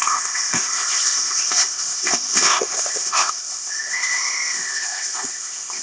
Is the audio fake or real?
fake